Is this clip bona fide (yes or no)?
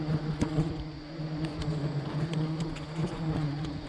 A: no